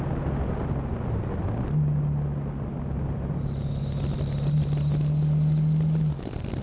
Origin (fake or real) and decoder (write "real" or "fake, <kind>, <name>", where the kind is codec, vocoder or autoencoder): real